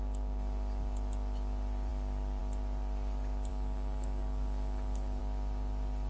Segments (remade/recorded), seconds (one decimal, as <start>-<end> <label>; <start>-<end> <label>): 0.0-3.5 recorded; 3.5-5.2 remade; 5.2-6.1 recorded